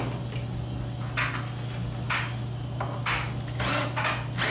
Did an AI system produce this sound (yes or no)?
no